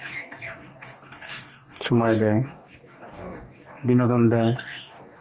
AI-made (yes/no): yes